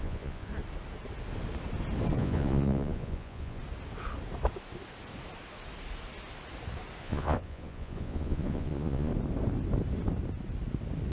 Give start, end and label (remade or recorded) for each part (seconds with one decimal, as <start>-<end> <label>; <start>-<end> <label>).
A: 0.0-0.5 remade; 0.5-2.1 recorded; 2.1-3.6 remade; 3.6-7.0 recorded; 7.0-9.1 remade; 9.1-11.1 recorded